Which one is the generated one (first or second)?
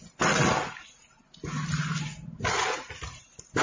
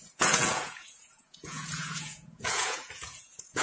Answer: second